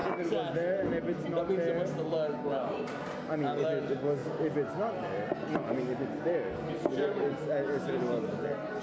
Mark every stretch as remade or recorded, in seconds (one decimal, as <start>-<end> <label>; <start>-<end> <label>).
0.0-8.8 recorded